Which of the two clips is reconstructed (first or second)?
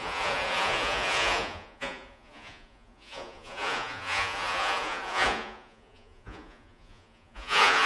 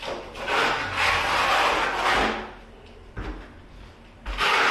first